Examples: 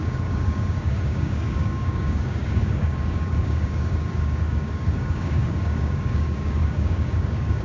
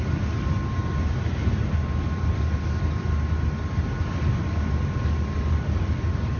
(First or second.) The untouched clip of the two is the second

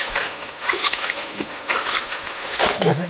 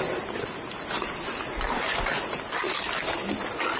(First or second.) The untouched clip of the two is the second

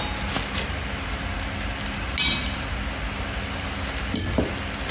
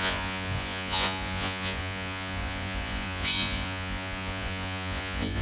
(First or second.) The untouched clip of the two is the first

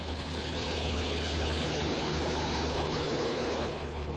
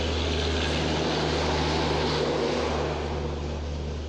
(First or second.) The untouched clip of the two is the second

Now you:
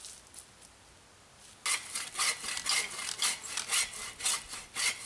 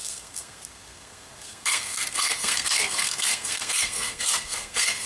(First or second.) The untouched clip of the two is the first